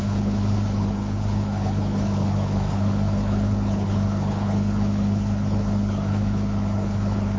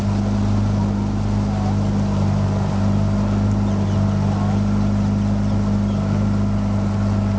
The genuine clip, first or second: second